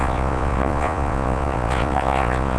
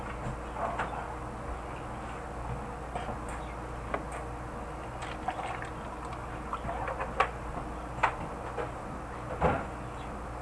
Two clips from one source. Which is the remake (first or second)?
first